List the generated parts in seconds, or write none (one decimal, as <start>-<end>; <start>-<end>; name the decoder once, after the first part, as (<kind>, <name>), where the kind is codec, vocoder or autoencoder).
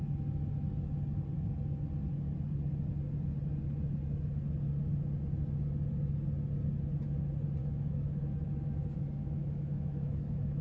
7.6-10.6 (autoencoder, DAC-VAE)